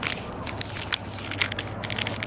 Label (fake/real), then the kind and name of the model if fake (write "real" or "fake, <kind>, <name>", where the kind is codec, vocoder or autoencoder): real